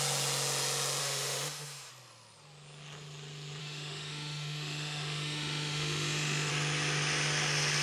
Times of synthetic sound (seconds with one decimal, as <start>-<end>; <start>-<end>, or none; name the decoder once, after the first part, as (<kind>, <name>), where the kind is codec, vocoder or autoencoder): 1.0-1.9 (autoencoder, DAC-VAE); 3.6-6.5